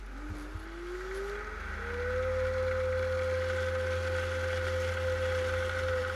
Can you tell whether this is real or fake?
real